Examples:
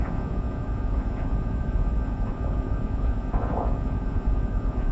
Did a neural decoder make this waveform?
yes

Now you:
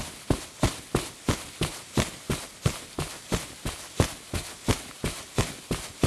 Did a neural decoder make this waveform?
no